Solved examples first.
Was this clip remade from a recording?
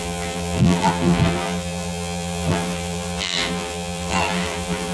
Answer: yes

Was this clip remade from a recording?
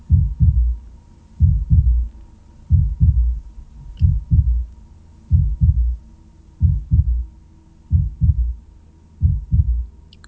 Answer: no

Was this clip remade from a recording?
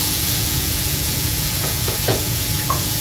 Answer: yes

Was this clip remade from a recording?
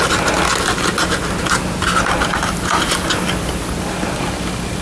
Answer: no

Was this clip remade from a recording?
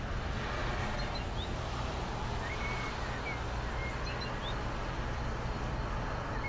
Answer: no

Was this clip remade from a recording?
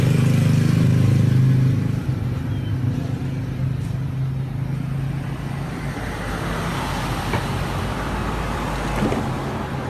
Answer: no